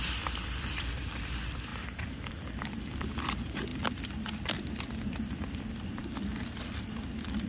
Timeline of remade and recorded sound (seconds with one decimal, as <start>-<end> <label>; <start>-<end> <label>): 0.0-1.7 remade; 1.7-2.3 recorded; 2.3-6.0 remade; 6.0-6.6 recorded; 6.6-7.5 remade